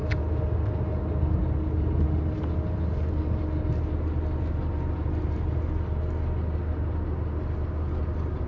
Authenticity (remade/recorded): recorded